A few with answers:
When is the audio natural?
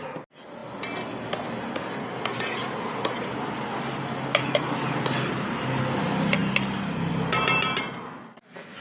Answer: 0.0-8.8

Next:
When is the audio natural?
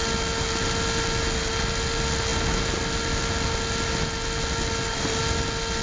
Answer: 0.0-5.8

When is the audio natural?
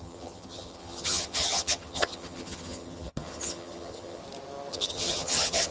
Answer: 4.2-4.7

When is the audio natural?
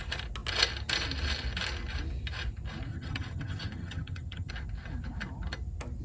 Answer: 0.0-2.9; 4.5-6.0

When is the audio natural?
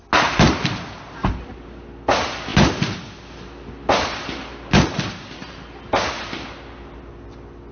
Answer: 0.0-7.7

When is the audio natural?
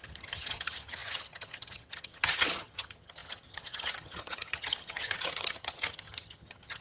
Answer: none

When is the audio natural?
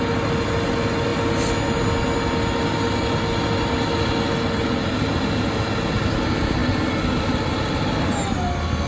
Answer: 0.0-8.9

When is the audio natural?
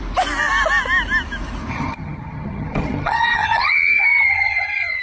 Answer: 0.0-1.7